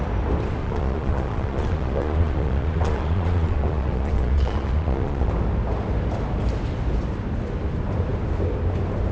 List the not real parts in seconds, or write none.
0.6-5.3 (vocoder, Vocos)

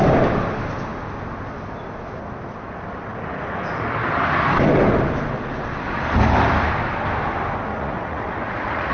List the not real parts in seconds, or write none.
7.7-8.9 (vocoder, Vocos)

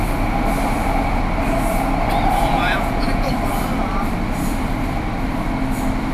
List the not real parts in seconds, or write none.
2.5-3.3 (vocoder, Vocos)

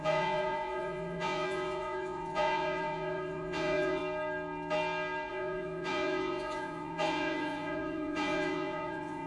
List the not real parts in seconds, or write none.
0.0-4.0 (vocoder, Vocos); 5.3-9.3